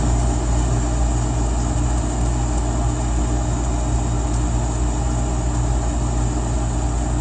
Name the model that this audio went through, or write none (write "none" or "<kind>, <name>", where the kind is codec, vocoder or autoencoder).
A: none